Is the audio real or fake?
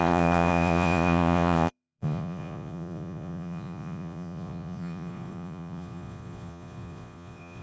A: fake